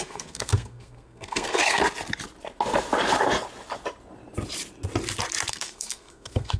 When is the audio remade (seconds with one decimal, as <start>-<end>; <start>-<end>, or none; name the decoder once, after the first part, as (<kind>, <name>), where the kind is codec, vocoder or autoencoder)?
0.0-1.8 (codec, SNAC); 5.5-6.6